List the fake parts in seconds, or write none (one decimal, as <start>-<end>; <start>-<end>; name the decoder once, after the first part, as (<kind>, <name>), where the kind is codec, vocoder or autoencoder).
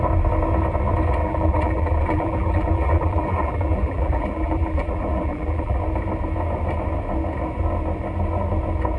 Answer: 1.2-5.8 (vocoder, BigVGAN v2)